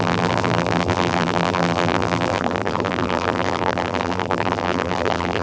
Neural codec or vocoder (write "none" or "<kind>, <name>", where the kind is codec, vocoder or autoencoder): vocoder, BigVGAN v2